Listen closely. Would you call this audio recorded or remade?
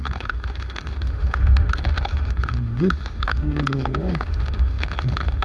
remade